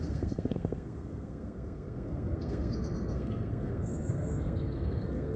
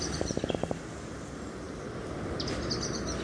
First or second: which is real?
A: second